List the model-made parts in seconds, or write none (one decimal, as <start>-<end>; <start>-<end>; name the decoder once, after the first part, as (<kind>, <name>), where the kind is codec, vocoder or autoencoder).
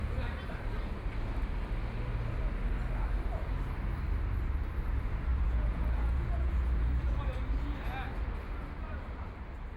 5.3-7.2 (vocoder, Vocos)